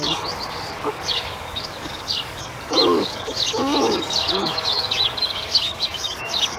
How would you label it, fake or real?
fake